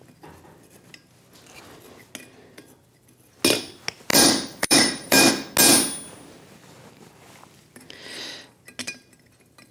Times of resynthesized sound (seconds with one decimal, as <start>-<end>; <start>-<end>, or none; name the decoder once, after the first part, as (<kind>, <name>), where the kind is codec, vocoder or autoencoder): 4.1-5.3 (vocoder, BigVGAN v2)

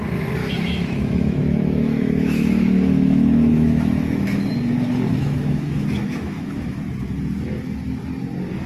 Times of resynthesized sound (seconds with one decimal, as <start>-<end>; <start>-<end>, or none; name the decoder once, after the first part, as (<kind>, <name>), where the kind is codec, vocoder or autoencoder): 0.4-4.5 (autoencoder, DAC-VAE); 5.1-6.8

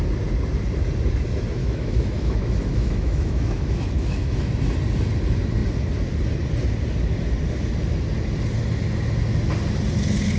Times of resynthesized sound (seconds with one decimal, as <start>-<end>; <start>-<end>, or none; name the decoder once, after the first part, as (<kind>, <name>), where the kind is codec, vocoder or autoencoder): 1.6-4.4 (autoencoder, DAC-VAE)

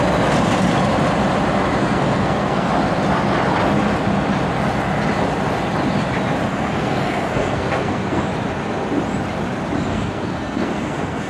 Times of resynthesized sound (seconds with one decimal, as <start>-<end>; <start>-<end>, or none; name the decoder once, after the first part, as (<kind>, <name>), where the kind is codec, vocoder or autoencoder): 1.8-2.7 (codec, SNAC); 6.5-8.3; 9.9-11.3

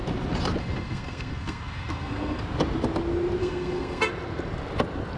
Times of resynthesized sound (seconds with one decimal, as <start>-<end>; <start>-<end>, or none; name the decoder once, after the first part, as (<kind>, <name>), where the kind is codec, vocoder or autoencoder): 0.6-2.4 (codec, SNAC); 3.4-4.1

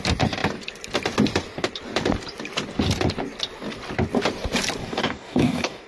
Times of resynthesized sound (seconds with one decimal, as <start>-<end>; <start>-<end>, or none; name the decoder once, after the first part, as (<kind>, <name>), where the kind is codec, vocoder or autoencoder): 4.8-5.9 (codec, DAC)